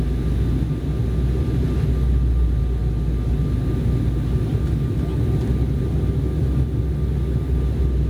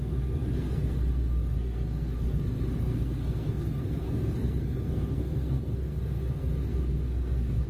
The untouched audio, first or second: first